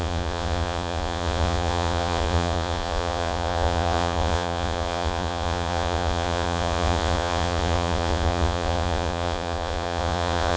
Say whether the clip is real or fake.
fake